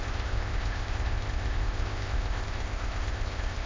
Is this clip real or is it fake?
fake